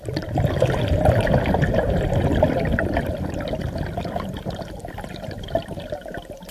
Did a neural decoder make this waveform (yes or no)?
no